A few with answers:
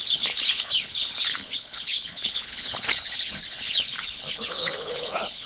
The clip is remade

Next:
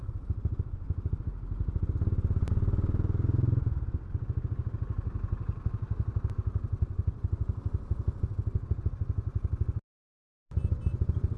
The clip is recorded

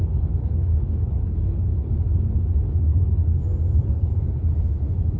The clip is remade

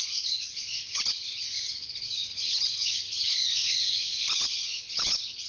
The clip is remade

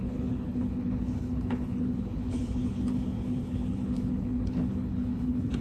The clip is remade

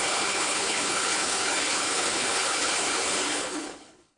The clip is remade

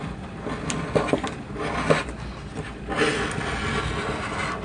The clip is recorded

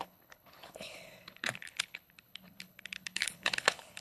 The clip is remade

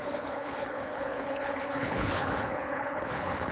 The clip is remade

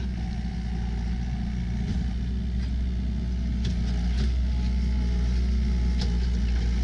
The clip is recorded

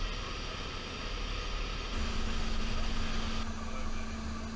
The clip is recorded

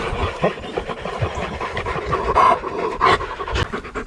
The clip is recorded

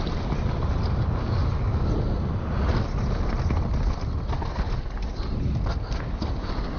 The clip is recorded